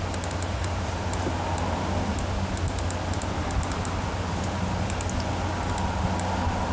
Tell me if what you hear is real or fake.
real